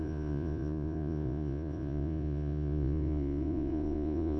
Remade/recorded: remade